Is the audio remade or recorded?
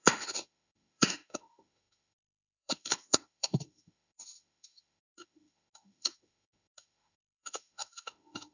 remade